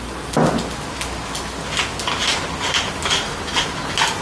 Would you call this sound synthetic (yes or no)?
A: no